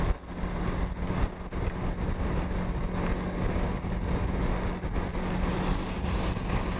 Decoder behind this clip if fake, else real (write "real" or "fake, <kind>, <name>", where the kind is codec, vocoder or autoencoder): real